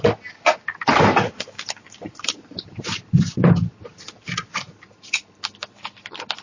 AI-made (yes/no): no